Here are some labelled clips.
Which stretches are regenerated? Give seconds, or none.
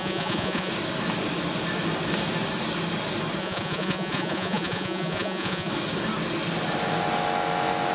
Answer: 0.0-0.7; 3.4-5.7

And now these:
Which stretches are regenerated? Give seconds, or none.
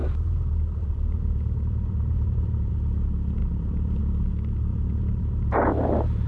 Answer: 0.0-2.7; 3.4-4.0; 4.7-6.3